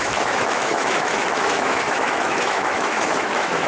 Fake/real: fake